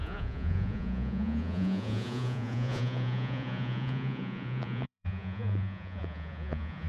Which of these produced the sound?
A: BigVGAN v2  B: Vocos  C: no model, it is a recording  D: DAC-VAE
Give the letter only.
B